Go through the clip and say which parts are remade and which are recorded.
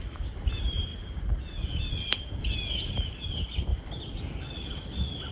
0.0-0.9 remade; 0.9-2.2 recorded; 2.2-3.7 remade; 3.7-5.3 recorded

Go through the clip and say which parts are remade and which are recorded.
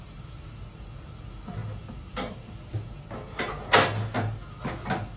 0.0-5.2 recorded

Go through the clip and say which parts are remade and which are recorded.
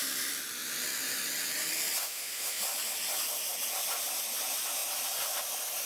0.0-2.0 recorded; 2.0-2.6 remade; 2.6-5.9 recorded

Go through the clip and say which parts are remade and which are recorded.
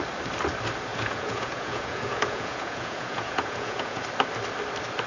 0.0-0.9 recorded; 0.9-4.0 remade; 4.0-5.1 recorded